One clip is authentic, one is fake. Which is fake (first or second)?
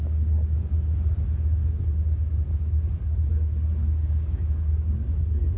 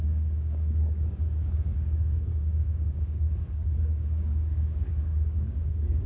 second